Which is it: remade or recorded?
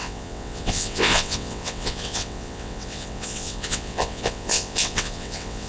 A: remade